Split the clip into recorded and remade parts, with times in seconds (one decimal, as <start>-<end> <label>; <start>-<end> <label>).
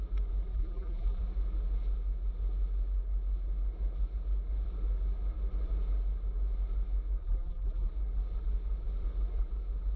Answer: 0.0-0.5 recorded; 0.5-1.2 remade; 1.2-7.2 recorded; 7.2-7.9 remade; 7.9-10.0 recorded